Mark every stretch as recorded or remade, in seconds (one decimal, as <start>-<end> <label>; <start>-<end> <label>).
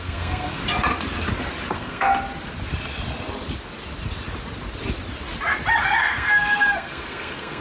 0.0-0.6 remade; 0.6-1.7 recorded; 1.7-2.1 remade; 2.1-5.8 recorded; 5.8-7.6 remade